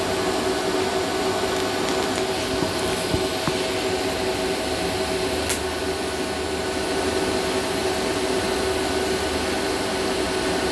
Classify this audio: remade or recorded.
recorded